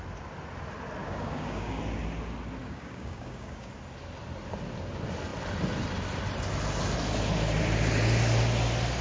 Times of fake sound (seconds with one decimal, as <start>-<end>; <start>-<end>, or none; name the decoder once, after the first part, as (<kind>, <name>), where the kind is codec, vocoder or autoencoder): 1.0-1.8 (codec, DAC); 2.6-3.7